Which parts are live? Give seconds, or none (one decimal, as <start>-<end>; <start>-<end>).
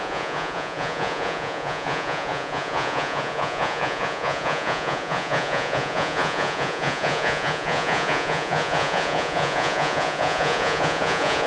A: none